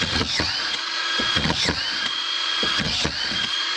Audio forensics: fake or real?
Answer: fake